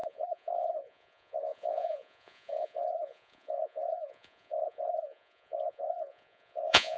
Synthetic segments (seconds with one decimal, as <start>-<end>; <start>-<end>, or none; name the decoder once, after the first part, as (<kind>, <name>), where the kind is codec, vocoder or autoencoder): 0.0-7.0 (vocoder, Vocos)